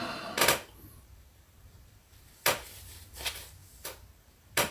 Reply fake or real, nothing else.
fake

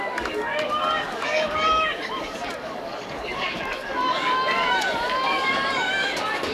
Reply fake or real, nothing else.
fake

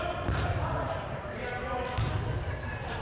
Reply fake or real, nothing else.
real